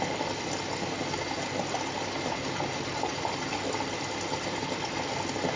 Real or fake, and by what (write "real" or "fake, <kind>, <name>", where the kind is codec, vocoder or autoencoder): real